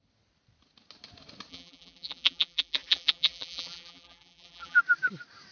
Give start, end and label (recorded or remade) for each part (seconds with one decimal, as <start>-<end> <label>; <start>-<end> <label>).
0.0-1.5 recorded; 1.5-4.8 remade; 4.8-5.5 recorded